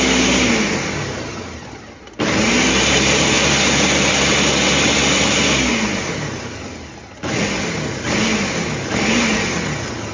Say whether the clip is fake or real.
real